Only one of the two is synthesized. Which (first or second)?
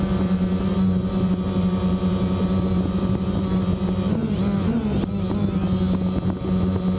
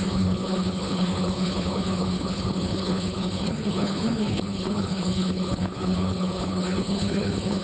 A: second